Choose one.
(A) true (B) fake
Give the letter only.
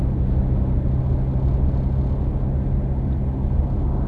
A